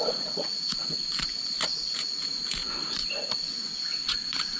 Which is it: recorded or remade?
remade